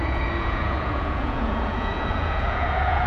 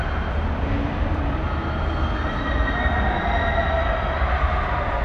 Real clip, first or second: second